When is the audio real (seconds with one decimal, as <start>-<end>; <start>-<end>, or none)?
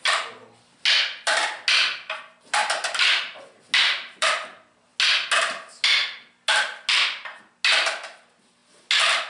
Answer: 0.0-3.8; 4.3-9.3